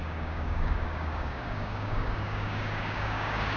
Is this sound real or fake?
fake